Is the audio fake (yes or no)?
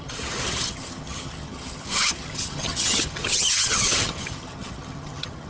yes